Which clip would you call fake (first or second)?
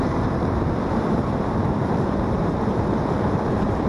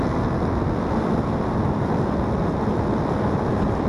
first